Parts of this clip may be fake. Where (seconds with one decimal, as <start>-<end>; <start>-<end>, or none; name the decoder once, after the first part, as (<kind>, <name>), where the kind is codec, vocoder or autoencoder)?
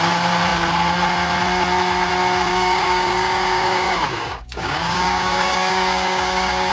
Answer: 2.5-6.7 (codec, DAC)